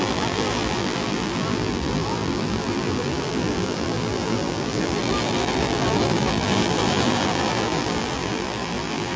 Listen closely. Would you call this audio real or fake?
fake